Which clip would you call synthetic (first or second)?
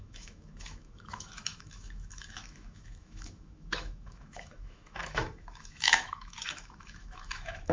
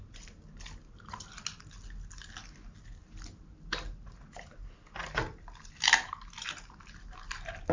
first